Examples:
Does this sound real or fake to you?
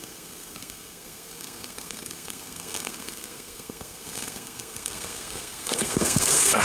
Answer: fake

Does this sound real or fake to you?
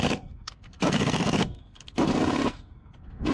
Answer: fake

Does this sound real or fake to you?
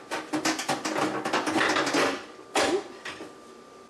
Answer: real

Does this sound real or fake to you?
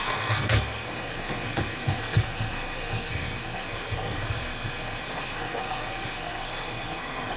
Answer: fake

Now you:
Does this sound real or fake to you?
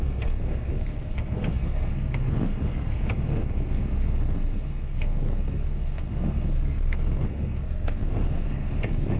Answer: fake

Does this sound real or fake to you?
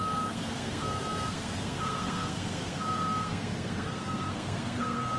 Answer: fake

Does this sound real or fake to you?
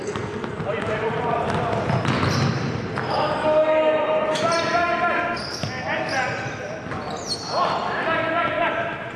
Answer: real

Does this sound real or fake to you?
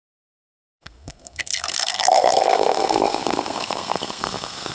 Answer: fake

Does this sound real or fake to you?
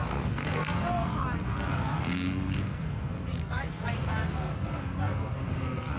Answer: fake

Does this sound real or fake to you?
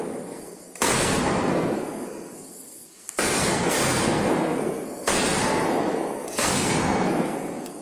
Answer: fake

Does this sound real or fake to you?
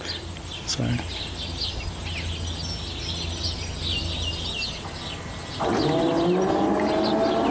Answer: real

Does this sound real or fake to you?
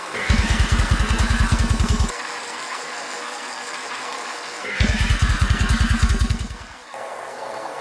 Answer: fake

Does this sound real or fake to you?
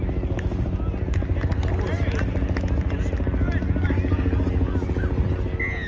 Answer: real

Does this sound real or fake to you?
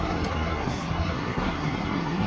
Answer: fake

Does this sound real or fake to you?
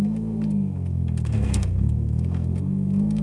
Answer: fake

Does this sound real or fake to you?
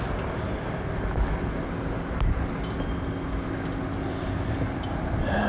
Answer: real